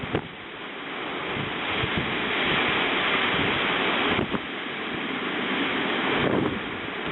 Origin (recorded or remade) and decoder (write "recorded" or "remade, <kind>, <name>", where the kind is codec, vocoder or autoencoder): recorded